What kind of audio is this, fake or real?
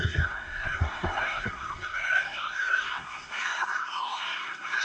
fake